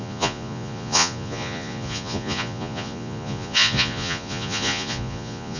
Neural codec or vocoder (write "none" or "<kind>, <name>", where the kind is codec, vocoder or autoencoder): vocoder, Vocos